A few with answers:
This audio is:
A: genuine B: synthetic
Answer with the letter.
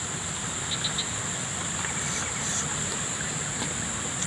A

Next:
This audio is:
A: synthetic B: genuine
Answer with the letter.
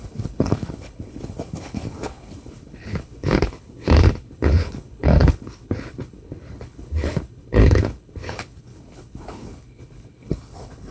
A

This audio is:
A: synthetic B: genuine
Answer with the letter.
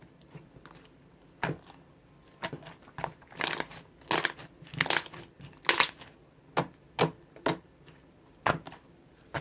B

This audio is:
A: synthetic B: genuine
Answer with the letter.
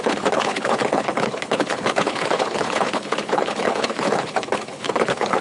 A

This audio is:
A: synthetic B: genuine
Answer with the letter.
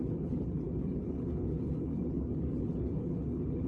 A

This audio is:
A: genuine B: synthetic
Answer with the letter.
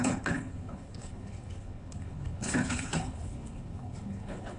B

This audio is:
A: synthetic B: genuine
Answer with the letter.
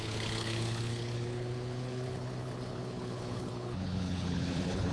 A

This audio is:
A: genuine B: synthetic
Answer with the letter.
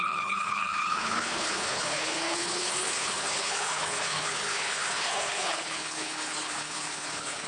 B